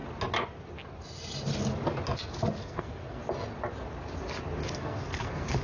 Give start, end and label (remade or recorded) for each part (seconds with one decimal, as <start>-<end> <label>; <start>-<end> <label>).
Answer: 0.0-2.6 recorded; 2.6-3.2 remade; 3.2-4.6 recorded; 4.6-5.6 remade